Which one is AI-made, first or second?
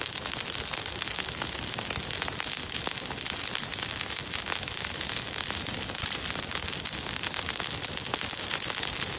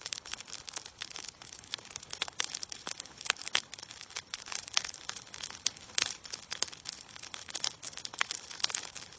second